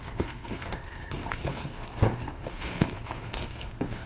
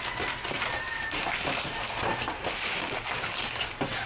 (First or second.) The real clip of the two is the second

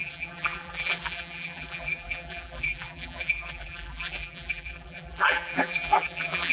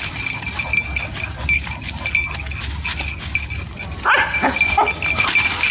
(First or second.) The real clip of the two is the second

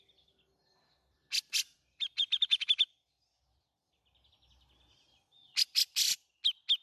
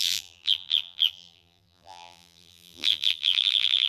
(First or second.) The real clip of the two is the first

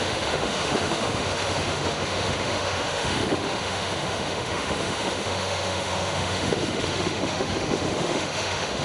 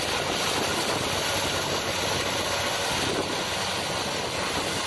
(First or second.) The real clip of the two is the second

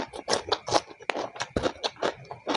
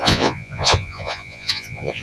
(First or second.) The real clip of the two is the first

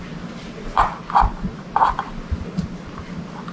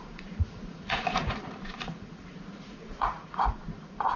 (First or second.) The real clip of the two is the first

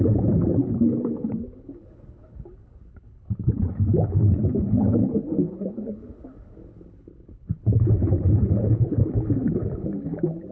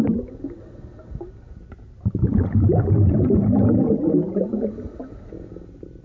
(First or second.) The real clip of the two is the second